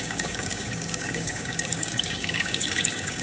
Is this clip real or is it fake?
fake